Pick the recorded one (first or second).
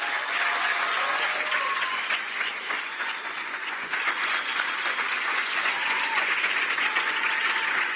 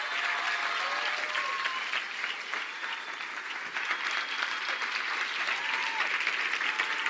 second